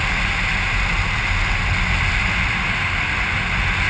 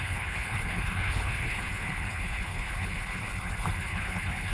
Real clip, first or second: first